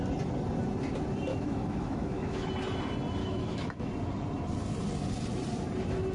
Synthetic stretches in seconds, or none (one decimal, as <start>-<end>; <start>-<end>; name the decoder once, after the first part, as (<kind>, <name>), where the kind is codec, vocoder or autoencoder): 1.3-2.5 (autoencoder, DAC-VAE); 3.2-3.9